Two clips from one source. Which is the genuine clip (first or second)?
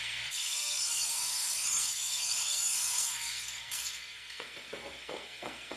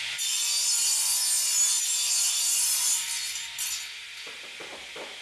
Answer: second